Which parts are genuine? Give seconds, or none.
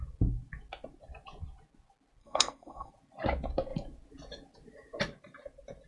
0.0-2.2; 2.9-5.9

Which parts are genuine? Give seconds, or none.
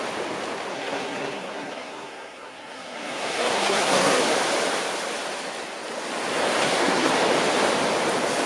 0.0-0.7; 4.2-6.6; 7.1-8.5